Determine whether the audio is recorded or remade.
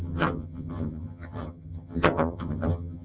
remade